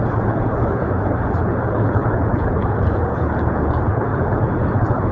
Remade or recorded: remade